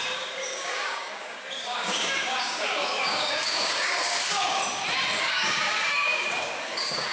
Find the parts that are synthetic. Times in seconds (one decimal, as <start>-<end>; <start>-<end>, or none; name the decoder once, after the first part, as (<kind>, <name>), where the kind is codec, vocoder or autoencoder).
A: 0.0-4.6 (codec, DAC); 5.2-7.1